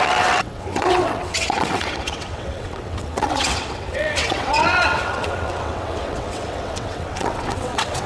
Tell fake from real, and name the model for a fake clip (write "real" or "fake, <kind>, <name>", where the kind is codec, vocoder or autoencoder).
fake, vocoder, WaveNeXt